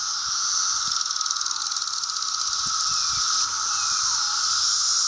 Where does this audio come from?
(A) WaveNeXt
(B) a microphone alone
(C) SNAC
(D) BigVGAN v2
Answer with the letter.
B